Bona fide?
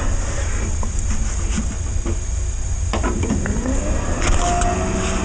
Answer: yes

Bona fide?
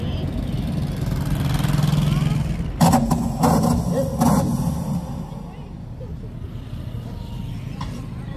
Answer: yes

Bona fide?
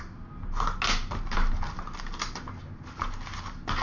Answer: yes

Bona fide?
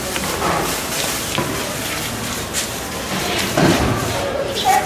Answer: yes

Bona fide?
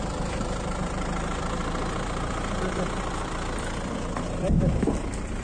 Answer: no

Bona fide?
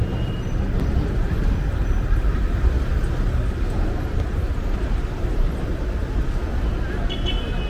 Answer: yes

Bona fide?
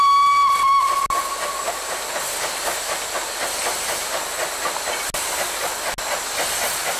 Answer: yes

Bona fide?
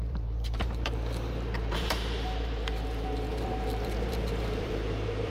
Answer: no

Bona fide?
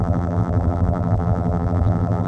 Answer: no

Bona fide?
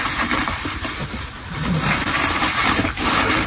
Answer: no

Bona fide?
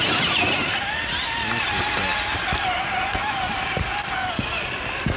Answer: yes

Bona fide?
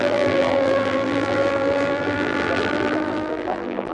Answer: no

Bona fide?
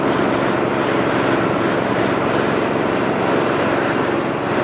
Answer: yes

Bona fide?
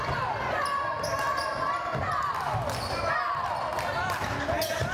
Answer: yes